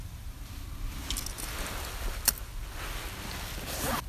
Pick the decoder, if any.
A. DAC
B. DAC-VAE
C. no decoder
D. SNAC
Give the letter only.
C